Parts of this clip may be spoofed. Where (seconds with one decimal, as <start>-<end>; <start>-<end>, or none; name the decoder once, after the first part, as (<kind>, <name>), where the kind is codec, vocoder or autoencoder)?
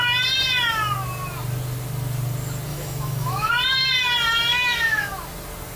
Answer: 2.7-3.5 (autoencoder, DAC-VAE); 4.5-5.1